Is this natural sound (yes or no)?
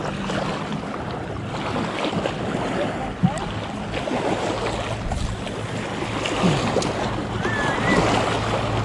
yes